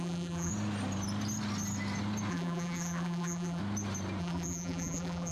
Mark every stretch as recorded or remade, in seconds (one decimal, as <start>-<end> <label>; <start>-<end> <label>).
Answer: 0.0-0.5 remade; 0.5-2.3 recorded; 2.3-3.6 remade; 3.6-4.2 recorded; 4.2-5.3 remade